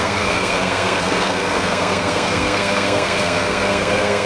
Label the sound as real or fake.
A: fake